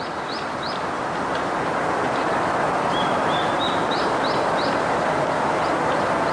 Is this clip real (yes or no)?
no